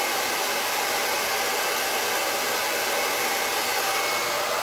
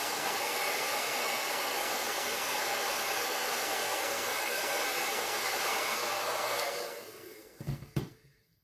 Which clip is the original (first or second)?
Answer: first